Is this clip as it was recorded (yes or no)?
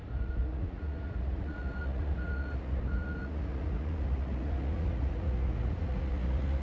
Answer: no